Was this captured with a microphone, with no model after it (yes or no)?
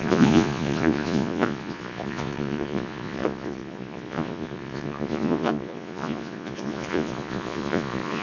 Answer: no